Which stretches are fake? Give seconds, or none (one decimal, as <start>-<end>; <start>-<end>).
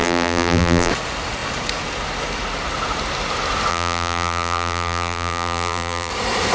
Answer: 0.0-0.9; 3.7-6.1